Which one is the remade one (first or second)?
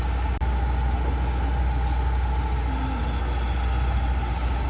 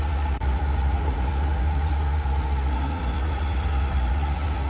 second